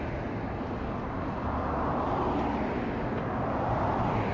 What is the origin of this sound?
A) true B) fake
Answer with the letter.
A